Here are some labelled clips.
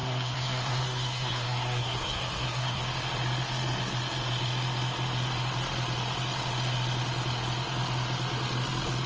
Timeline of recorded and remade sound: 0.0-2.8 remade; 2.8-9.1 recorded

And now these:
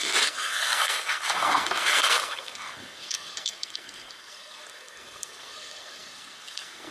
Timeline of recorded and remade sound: 0.0-6.9 remade

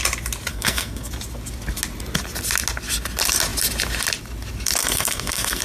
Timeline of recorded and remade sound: 0.0-0.5 recorded; 0.5-1.1 remade; 1.1-4.8 recorded; 4.8-5.6 remade

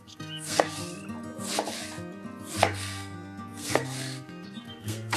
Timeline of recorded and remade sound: 0.0-0.8 remade; 0.8-2.6 recorded; 2.6-5.2 remade